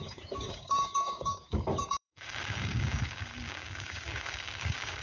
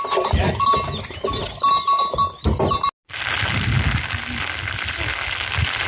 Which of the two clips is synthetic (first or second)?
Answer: first